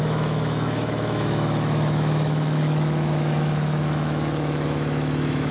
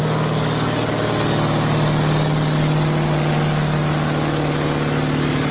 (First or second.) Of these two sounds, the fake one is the first